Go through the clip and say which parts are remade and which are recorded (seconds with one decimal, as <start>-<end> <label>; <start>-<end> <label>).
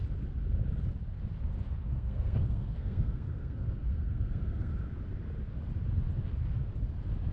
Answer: 0.0-1.9 recorded; 1.9-4.7 remade; 4.7-7.3 recorded